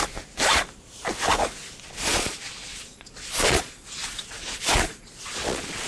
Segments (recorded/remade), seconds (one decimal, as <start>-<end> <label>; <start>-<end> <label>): 0.0-2.1 recorded; 2.1-5.9 remade